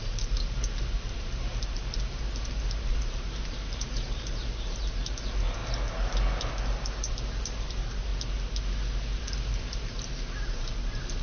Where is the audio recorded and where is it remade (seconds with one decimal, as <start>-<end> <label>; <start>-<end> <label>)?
0.0-5.6 remade; 5.6-7.1 recorded; 7.1-8.1 remade; 8.1-9.2 recorded; 9.2-11.2 remade